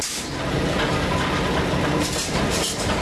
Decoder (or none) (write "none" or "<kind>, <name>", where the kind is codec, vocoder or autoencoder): none